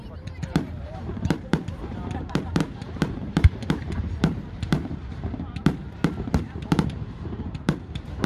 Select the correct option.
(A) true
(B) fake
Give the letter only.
B